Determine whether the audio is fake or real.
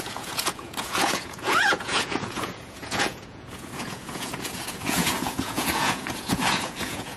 fake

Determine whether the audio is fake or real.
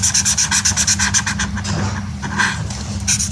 real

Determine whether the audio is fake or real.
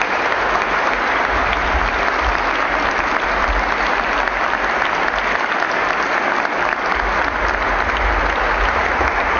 real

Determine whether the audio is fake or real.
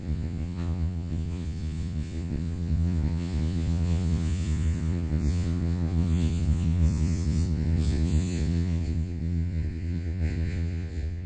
fake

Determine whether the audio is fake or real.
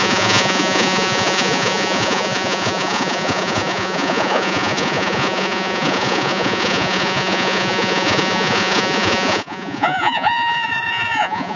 fake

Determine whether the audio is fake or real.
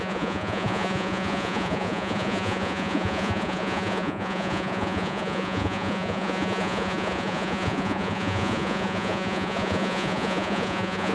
fake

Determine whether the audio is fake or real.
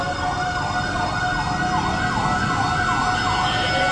real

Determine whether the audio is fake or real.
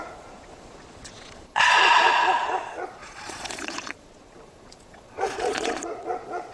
fake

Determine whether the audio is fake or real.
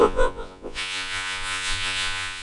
fake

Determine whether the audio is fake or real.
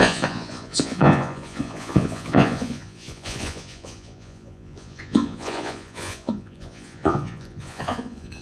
fake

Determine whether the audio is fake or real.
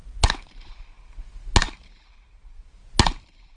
real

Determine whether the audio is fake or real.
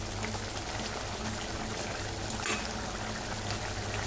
real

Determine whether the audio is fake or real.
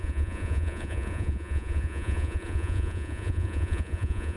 fake